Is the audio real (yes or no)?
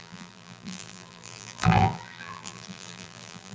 no